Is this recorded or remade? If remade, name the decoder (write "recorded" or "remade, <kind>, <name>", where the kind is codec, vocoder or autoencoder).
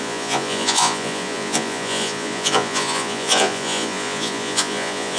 remade, vocoder, Vocos